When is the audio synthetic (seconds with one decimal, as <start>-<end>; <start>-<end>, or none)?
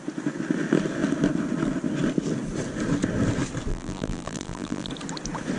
3.7-4.9